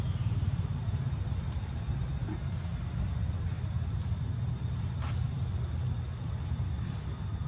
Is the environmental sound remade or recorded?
recorded